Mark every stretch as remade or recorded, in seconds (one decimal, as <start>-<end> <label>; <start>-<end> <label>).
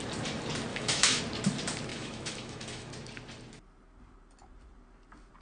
0.0-0.7 recorded; 0.7-1.2 remade; 1.2-1.9 recorded; 1.9-2.9 remade; 2.9-5.4 recorded